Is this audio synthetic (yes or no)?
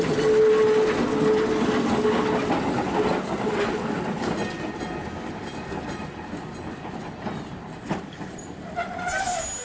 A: no